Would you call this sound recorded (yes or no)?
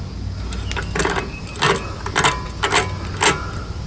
yes